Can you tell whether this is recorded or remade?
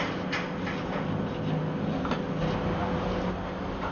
recorded